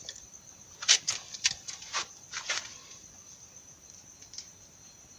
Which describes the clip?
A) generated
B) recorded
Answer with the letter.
A